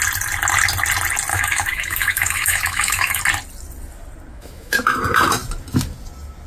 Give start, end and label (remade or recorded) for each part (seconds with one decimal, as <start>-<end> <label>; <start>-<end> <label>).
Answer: 0.0-1.3 recorded; 1.3-3.2 remade; 3.2-4.3 recorded; 4.3-5.0 remade; 5.0-6.5 recorded